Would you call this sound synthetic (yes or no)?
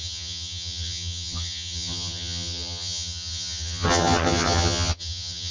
yes